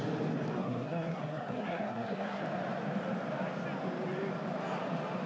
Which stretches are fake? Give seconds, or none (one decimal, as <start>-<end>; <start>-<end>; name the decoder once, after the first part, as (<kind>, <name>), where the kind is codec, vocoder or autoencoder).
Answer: 0.6-2.4 (codec, SNAC)